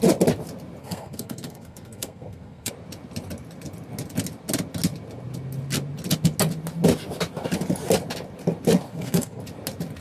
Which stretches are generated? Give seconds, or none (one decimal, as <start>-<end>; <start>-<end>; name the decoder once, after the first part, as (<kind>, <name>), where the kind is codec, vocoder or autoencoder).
0.8-2.7 (codec, SNAC); 8.9-9.4